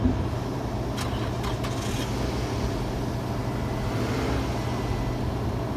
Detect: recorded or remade recorded